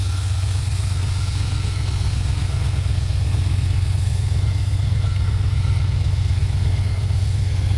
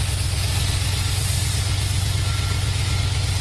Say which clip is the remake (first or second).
first